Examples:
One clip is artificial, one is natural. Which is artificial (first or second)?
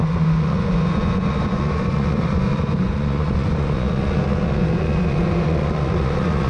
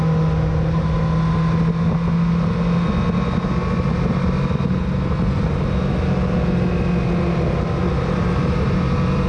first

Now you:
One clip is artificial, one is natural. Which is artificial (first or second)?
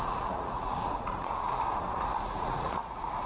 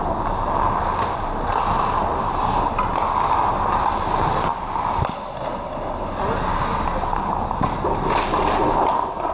first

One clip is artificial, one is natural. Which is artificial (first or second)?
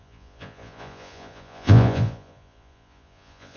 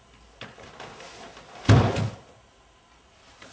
first